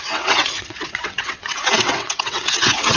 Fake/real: fake